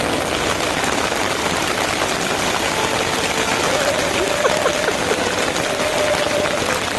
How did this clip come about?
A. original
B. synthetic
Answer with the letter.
A